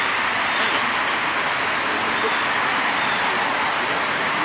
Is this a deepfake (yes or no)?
no